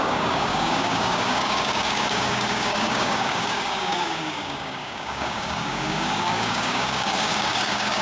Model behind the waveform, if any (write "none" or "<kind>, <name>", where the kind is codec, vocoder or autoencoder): codec, DAC